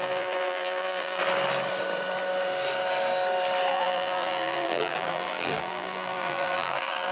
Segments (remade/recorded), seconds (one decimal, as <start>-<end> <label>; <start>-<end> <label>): 0.0-1.2 remade; 1.2-3.7 recorded; 3.7-7.1 remade